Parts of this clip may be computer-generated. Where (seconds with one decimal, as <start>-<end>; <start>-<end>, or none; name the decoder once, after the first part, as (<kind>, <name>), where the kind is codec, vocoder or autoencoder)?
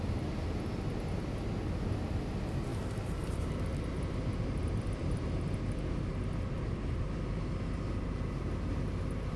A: 2.7-7.2 (vocoder, BigVGAN v2)